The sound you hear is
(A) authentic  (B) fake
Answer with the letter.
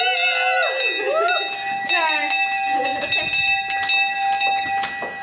A